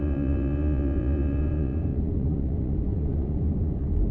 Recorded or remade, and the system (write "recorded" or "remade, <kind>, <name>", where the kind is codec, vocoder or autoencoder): remade, vocoder, Vocos